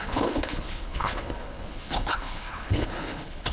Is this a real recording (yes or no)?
no